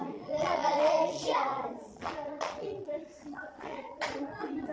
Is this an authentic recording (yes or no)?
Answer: no